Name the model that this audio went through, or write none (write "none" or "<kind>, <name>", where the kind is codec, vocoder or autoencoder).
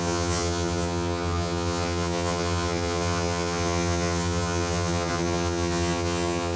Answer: vocoder, HiFi-GAN